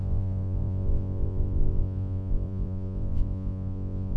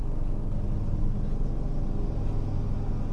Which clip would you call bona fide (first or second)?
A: second